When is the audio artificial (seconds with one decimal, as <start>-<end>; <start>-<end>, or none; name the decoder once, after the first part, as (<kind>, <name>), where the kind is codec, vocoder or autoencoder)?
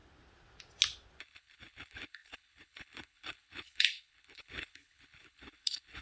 1.2-6.0 (codec, HILCodec)